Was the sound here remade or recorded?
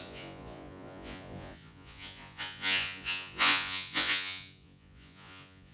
remade